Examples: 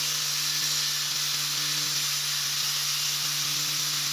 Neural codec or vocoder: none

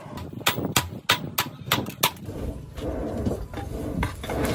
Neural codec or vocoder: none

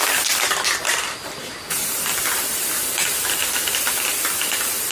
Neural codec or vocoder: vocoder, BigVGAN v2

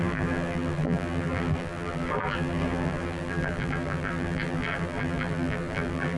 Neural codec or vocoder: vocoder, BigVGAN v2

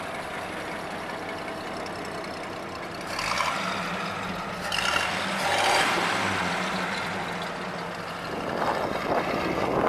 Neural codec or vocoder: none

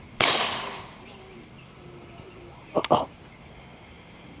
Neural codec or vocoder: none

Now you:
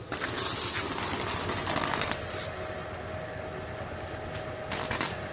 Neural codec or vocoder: none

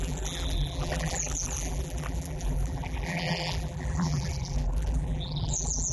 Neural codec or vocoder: vocoder, BigVGAN v2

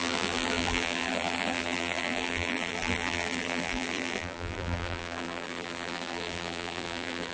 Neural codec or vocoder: vocoder, BigVGAN v2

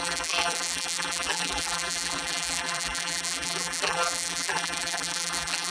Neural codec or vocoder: vocoder, BigVGAN v2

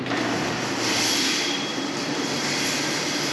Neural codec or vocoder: vocoder, BigVGAN v2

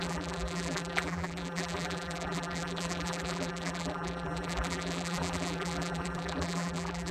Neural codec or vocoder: vocoder, BigVGAN v2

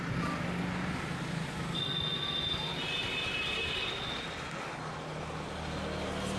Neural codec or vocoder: none